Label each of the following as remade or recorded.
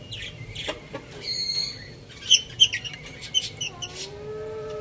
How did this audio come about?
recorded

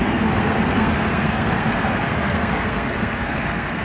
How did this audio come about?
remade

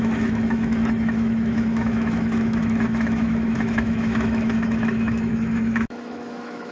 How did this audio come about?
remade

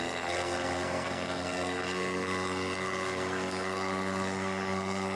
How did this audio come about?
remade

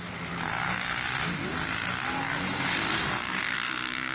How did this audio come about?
recorded